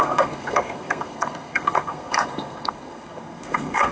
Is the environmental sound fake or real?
fake